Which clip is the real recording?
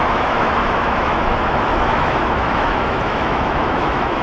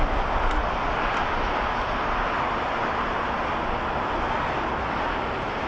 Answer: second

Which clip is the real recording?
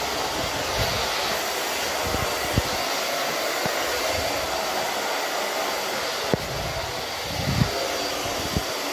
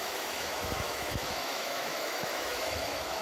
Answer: first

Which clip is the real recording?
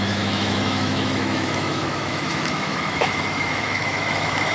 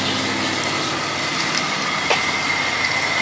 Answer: second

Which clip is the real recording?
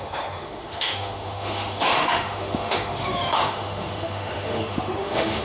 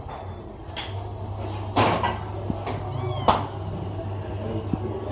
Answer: second